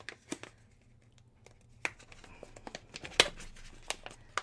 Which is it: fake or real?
real